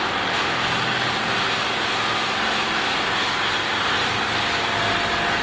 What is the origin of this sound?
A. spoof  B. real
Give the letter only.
B